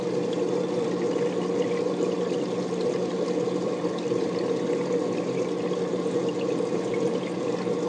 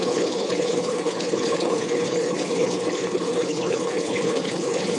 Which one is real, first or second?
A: first